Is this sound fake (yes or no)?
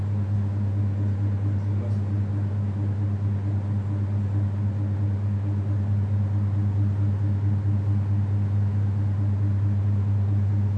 no